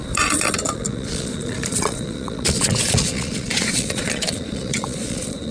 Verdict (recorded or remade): remade